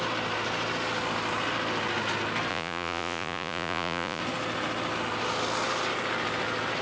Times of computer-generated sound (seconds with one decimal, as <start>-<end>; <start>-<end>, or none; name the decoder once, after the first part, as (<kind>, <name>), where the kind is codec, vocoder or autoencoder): 2.5-4.2 (vocoder, Vocos)